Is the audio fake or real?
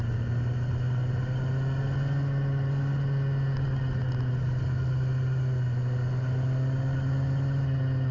real